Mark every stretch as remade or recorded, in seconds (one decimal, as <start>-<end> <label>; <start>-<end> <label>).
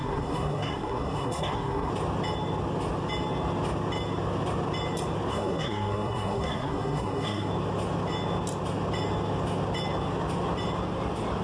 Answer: 0.0-1.9 remade; 1.9-5.3 recorded; 5.3-7.5 remade; 7.5-11.4 recorded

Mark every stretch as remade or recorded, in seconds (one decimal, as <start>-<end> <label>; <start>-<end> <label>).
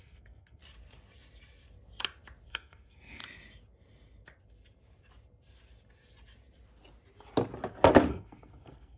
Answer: 0.0-0.6 remade; 0.6-2.5 recorded; 2.5-3.2 remade; 3.2-8.1 recorded; 8.1-9.0 remade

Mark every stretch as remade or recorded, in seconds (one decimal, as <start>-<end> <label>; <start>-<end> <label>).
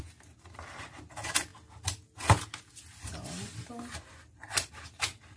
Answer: 0.0-5.4 recorded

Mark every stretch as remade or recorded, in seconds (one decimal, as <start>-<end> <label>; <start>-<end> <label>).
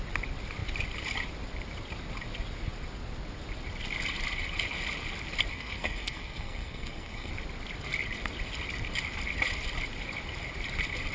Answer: 0.0-5.5 recorded; 5.5-7.3 remade; 7.3-11.1 recorded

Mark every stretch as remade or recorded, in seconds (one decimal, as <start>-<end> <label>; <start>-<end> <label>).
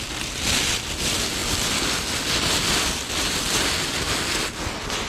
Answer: 0.0-5.1 recorded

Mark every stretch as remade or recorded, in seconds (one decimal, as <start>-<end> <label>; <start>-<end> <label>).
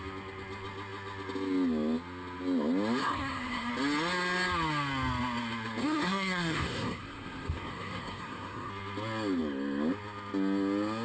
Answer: 0.0-3.0 recorded; 3.0-3.7 remade; 3.7-5.8 recorded; 5.8-8.7 remade; 8.7-11.0 recorded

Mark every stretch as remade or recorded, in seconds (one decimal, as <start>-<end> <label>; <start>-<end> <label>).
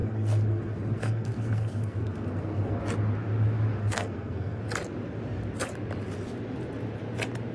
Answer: 0.0-2.8 remade; 2.8-3.8 recorded; 3.8-4.6 remade; 4.6-7.5 recorded